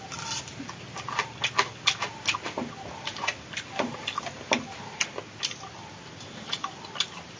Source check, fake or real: real